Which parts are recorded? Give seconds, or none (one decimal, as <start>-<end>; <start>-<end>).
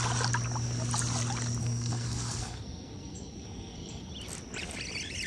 0.0-1.6; 4.1-5.3